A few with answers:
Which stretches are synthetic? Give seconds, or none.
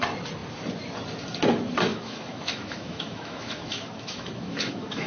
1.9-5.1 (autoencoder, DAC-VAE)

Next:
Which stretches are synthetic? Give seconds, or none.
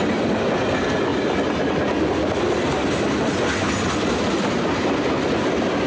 none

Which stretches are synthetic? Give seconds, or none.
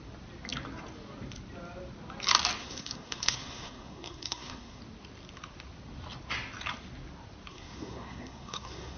2.6-4.8 (codec, SNAC); 7.5-9.0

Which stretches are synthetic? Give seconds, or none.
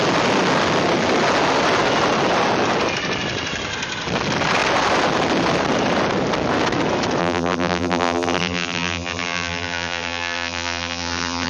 7.2-11.5 (vocoder, BigVGAN v2)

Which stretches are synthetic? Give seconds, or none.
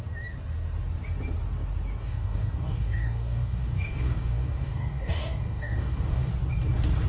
2.0-6.3 (codec, DAC)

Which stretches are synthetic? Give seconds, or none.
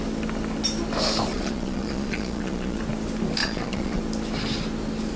1.3-2.8 (vocoder, Vocos); 3.4-4.0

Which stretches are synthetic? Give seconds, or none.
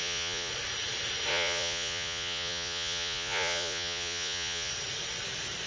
0.0-0.5 (vocoder, Vocos); 1.3-4.7